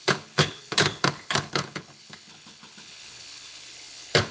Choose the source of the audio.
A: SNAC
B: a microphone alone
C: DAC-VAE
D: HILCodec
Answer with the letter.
D